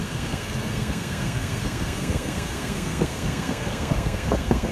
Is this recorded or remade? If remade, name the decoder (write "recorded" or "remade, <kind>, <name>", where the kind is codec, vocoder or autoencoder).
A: remade, codec, SNAC